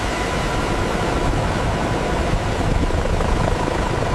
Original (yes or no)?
yes